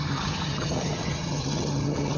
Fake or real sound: fake